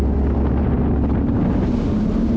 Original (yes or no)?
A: yes